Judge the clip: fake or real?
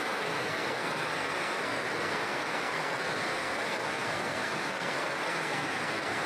fake